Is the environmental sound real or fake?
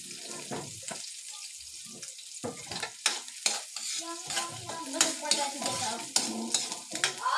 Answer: real